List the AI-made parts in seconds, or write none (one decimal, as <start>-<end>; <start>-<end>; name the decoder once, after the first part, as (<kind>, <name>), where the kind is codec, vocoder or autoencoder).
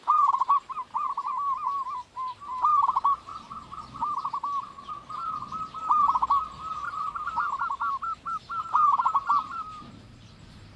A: 0.0-3.3 (vocoder, BigVGAN v2); 6.7-10.8